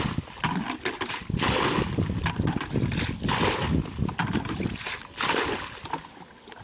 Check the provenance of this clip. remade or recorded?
recorded